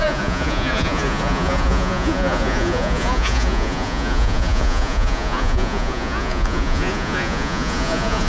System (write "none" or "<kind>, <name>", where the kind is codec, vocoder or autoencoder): vocoder, Vocos